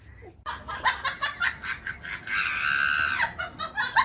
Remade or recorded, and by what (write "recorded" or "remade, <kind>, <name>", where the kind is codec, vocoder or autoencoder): recorded